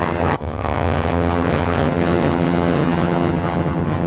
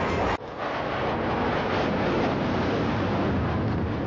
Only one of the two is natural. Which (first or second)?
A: second